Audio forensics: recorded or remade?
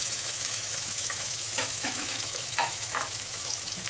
remade